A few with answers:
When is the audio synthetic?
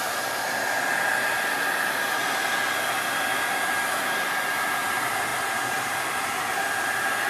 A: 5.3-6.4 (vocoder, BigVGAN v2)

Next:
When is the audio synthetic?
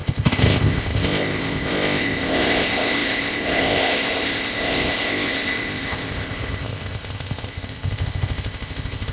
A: 0.0-9.1 (codec, ZipCodec)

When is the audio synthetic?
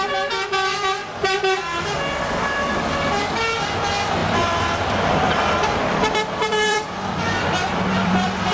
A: 1.0-1.9 (vocoder, BigVGAN v2); 4.2-8.5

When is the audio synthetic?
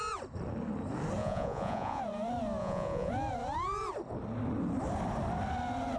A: 1.2-2.0 (vocoder, Vocos); 2.6-3.1